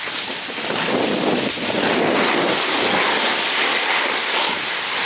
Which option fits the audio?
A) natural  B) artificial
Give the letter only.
A